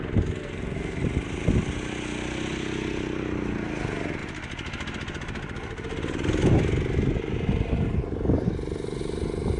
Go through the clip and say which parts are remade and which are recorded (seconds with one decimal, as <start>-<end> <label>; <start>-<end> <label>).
0.0-0.4 recorded; 0.4-1.0 remade; 1.0-9.6 recorded